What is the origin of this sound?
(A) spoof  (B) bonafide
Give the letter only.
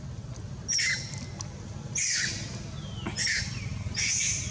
B